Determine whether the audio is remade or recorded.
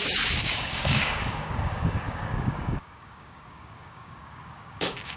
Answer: remade